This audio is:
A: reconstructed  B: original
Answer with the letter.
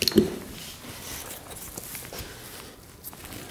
B